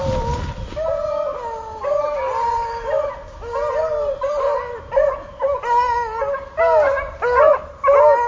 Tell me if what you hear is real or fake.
real